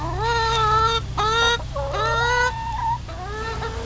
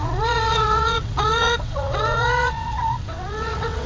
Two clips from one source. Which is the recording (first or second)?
first